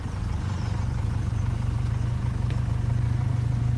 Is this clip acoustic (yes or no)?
no